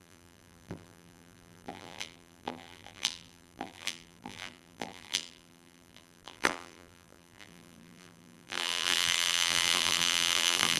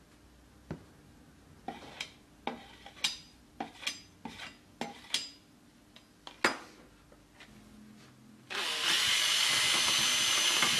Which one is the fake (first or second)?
first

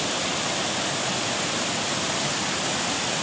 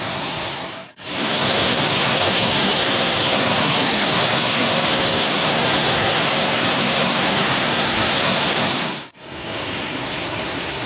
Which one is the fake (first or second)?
second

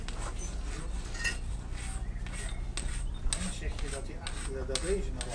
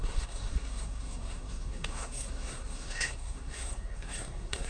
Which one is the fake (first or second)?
second